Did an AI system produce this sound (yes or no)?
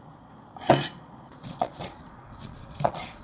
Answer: yes